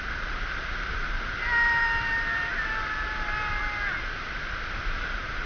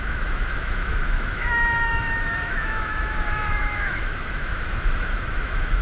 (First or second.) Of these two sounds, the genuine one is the first